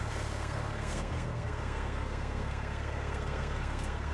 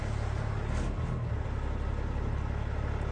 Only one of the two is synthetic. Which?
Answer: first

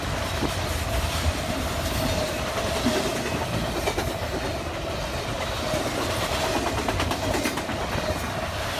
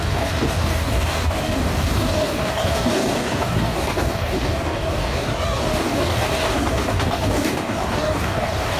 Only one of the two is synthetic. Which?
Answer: second